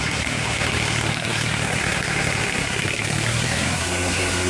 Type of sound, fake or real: fake